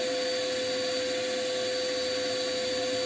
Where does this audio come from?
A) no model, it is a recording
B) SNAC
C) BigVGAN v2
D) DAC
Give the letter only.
A